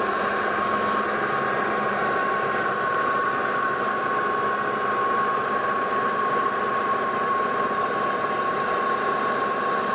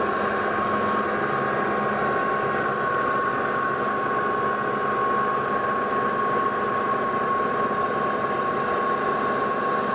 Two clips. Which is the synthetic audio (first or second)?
first